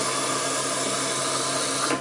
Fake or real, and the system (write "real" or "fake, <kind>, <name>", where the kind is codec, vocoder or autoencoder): real